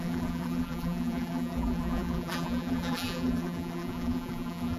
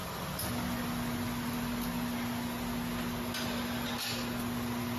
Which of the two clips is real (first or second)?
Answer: second